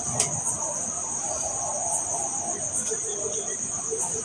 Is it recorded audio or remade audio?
recorded